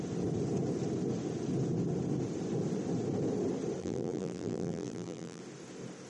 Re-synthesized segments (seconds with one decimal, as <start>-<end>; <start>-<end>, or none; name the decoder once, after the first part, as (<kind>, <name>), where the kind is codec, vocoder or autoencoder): 3.8-5.4 (vocoder, BigVGAN v2)

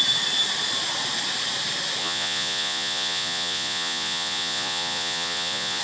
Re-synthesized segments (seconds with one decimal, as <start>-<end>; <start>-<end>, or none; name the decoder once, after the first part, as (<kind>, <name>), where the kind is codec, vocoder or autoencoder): 2.0-5.8 (vocoder, Vocos)

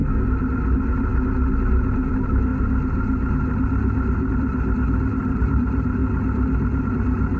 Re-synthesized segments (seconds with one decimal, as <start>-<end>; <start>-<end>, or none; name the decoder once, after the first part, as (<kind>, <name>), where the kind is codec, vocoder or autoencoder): 2.1-2.5 (vocoder, BigVGAN v2); 4.3-6.0; 6.8-7.4